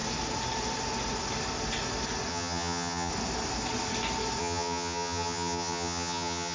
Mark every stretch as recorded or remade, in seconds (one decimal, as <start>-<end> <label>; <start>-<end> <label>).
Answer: 0.0-2.3 recorded; 2.3-3.1 remade; 3.1-4.4 recorded; 4.4-6.5 remade